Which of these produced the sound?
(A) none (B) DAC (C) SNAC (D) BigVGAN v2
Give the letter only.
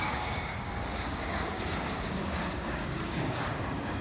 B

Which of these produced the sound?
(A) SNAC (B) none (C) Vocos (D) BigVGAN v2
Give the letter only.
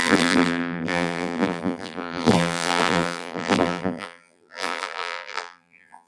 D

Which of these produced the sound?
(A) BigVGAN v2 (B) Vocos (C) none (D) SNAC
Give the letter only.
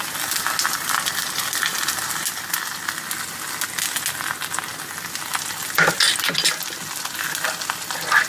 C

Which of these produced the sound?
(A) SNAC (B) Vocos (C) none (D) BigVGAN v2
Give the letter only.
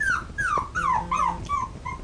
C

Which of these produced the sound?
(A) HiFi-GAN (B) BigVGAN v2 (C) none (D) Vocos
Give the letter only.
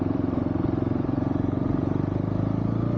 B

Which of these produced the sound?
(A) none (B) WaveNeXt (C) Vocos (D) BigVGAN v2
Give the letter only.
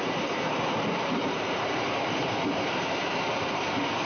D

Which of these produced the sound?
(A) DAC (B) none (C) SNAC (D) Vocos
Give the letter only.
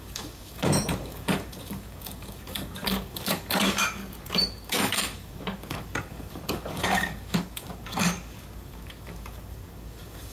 A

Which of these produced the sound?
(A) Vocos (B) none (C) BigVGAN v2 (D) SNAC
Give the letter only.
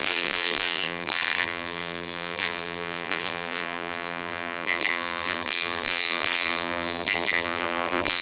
C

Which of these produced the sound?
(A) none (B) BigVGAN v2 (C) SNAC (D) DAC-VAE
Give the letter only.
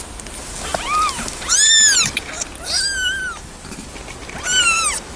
A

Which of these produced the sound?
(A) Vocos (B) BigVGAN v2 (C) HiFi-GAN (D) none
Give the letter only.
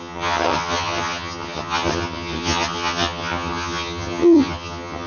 C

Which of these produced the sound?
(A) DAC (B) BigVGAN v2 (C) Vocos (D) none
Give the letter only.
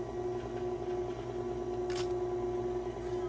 D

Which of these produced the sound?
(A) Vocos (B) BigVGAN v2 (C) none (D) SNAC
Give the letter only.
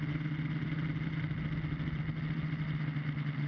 C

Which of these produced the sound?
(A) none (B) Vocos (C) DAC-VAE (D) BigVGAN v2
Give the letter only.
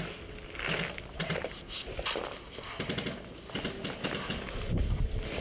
A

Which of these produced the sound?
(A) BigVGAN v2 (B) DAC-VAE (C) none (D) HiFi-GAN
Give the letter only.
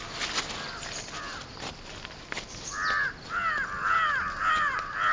C